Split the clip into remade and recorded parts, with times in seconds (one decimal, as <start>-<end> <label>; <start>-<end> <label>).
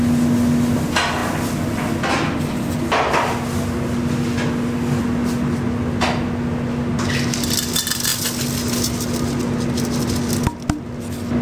0.0-11.4 recorded